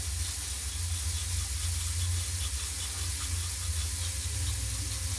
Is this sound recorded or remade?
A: recorded